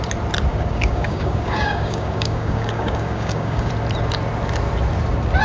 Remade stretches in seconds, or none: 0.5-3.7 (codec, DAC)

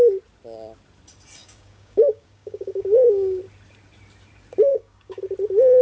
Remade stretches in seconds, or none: 1.4-3.4 (codec, DAC); 4.7-5.2

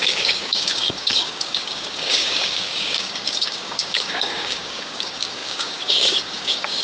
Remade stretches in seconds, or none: 0.0-6.8 (codec, DAC)

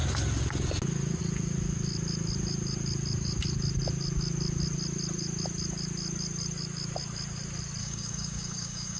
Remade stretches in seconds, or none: 7.8-9.0 (codec, DAC)

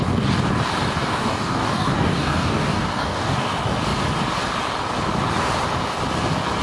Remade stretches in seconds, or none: 1.0-3.5 (codec, DAC)

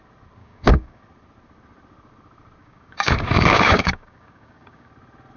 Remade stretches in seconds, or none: 0.4-1.0 (codec, DAC); 2.6-4.9

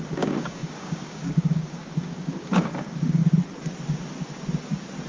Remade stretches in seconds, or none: 0.0-3.2 (codec, DAC)

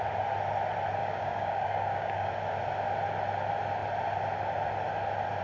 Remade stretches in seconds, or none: 1.0-2.3 (codec, DAC)